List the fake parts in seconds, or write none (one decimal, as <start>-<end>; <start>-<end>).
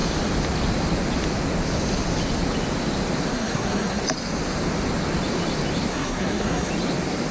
3.3-4.0; 5.9-6.7